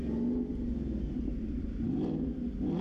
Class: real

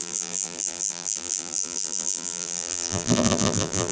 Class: fake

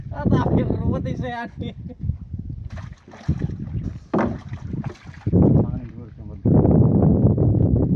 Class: real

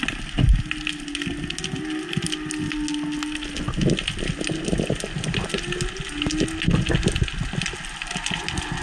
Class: real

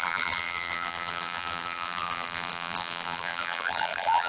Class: fake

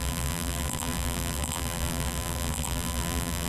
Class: fake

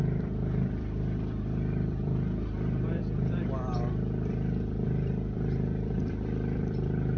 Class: fake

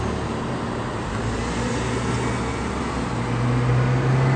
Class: real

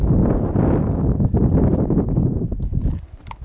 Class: fake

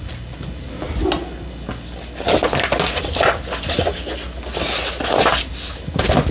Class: real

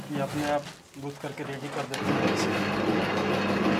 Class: real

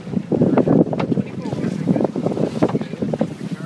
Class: fake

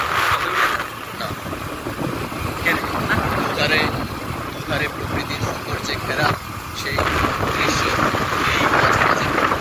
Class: real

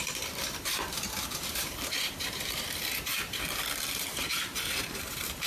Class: fake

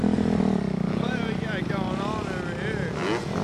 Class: real